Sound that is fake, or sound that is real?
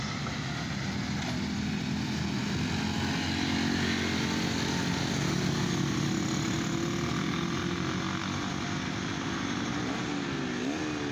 real